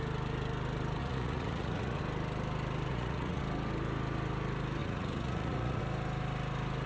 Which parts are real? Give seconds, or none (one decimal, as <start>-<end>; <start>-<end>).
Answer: 0.0-1.0; 2.0-2.9; 3.4-4.8; 5.8-6.9